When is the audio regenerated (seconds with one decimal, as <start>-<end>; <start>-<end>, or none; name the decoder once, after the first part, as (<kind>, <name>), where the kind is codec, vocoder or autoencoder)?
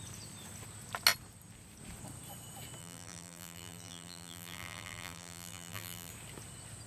2.8-6.1 (vocoder, BigVGAN v2)